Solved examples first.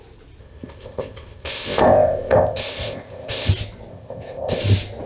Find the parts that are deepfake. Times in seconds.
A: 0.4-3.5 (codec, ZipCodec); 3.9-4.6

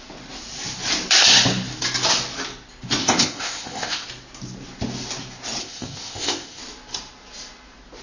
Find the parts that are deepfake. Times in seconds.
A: 3.0-4.1 (codec, ZipCodec); 5.6-6.6

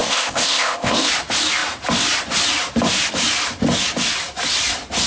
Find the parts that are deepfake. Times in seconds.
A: 0.0-1.1 (codec, ZipCodec)

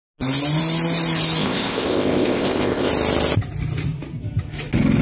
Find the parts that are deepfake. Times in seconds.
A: 1.4-2.9 (codec, ZipCodec)